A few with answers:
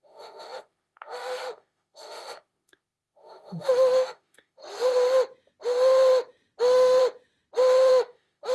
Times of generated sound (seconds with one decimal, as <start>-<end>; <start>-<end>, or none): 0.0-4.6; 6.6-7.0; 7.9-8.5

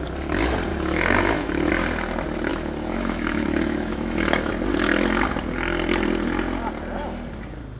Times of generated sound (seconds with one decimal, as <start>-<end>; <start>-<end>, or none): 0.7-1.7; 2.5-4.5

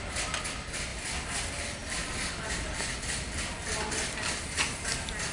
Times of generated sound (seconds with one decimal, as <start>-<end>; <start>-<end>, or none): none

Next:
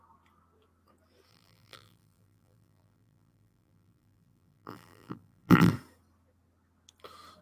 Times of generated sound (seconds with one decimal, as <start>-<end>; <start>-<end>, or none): 1.3-5.7

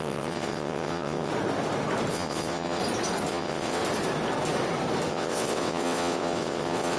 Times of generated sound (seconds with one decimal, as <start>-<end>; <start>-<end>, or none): 0.0-1.3; 2.1-2.8; 3.3-3.8; 5.1-7.0

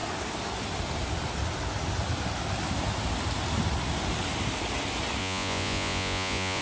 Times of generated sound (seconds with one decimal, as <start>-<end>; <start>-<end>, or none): 5.2-6.6

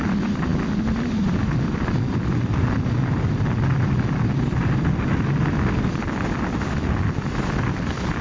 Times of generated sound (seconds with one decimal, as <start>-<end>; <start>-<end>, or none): none